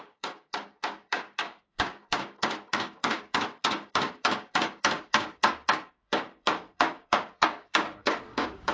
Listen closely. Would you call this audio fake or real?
fake